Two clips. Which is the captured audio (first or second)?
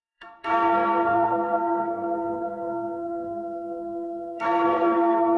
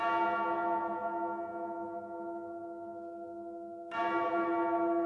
second